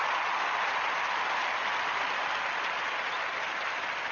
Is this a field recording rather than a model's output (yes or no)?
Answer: yes